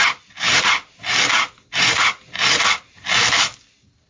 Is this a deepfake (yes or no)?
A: no